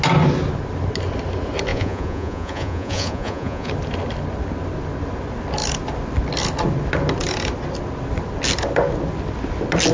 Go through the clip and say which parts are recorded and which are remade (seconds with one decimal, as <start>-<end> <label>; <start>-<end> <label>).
0.0-1.7 recorded; 1.7-3.7 remade; 3.7-9.9 recorded